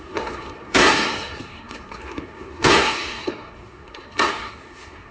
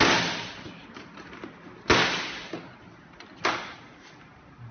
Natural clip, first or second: second